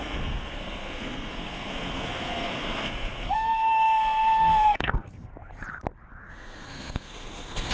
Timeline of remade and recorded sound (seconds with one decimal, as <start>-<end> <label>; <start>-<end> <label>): 0.0-5.3 remade; 5.3-6.3 recorded; 6.3-7.7 remade